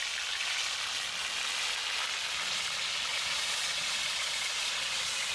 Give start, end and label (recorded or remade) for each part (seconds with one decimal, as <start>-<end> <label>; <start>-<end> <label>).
0.0-3.1 recorded; 3.1-5.3 remade